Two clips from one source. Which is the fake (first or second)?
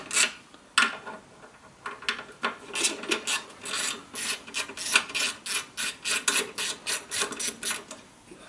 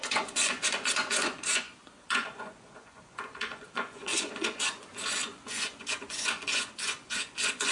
second